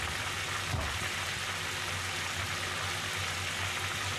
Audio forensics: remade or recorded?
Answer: recorded